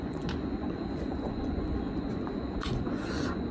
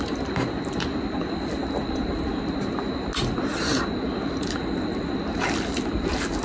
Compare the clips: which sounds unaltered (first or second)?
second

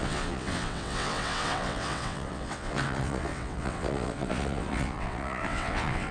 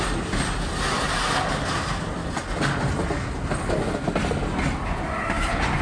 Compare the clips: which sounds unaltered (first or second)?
second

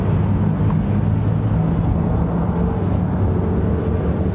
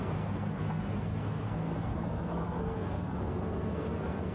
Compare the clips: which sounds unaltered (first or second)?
first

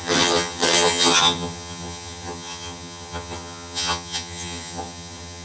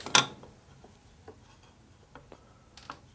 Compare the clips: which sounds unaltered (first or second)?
second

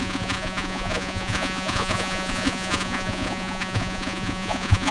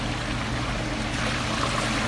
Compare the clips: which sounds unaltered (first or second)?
second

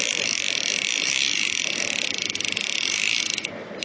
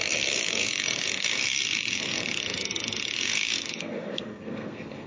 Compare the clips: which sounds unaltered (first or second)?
first